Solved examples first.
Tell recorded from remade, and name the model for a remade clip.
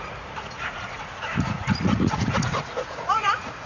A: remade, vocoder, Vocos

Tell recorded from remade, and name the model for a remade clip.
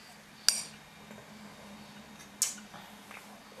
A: recorded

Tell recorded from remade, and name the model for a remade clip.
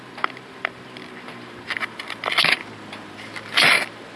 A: recorded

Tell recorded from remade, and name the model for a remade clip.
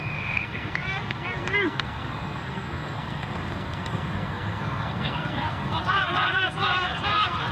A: remade, codec, SNAC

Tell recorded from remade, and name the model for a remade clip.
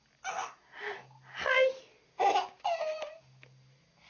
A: recorded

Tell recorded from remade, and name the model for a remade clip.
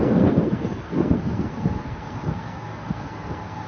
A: remade, codec, SNAC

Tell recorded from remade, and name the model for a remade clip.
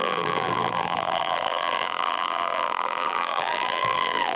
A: remade, vocoder, BigVGAN v2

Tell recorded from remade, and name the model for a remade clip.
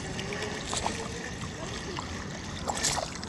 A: recorded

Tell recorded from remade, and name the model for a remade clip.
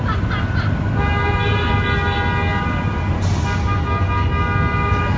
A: recorded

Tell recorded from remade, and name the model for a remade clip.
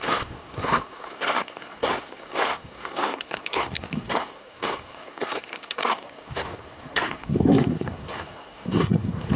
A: remade, codec, SNAC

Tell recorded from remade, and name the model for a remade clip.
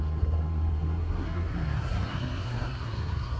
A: remade, codec, SNAC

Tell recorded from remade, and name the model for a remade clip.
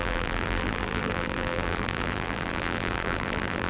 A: remade, vocoder, BigVGAN v2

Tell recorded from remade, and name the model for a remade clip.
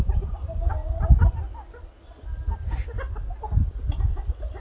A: recorded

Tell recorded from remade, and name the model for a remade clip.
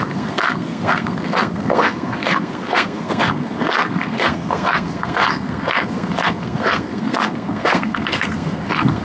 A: remade, codec, SNAC